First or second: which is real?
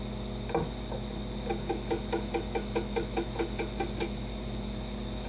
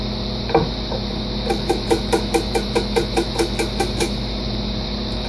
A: first